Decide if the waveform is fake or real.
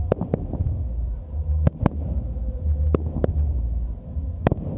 real